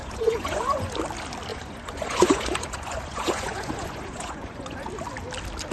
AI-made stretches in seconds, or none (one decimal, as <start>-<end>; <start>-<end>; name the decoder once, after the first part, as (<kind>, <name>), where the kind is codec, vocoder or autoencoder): 0.0-0.9 (vocoder, Vocos); 1.5-4.9